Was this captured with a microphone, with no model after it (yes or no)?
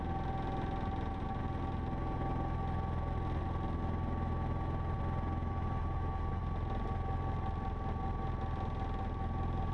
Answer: yes